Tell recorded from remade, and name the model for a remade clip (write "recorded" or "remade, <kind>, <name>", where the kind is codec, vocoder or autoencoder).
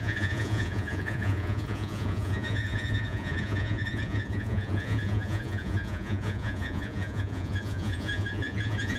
remade, vocoder, Vocos